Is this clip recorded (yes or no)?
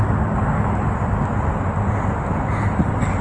yes